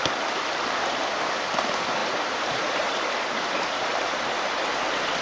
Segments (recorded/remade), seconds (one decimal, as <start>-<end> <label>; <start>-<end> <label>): 0.0-2.0 recorded; 2.0-5.2 remade